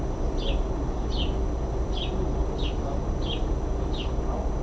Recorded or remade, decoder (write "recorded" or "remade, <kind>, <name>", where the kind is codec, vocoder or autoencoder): recorded